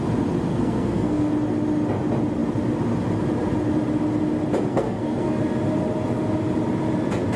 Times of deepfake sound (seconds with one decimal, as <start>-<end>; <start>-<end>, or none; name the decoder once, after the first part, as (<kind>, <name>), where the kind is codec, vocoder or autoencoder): 0.5-1.3 (codec, SNAC); 4.7-5.4